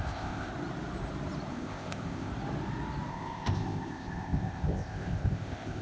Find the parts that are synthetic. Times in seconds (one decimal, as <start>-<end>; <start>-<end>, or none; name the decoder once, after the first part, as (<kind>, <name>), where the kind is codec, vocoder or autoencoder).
0.0-0.5 (codec, ZipCodec); 1.5-2.3; 3.1-5.8